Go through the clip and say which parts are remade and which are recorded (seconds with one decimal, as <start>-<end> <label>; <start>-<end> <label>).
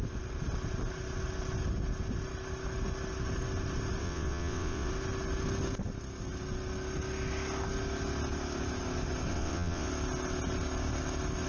0.0-4.0 recorded; 4.0-4.9 remade; 4.9-9.3 recorded; 9.3-9.9 remade; 9.9-11.5 recorded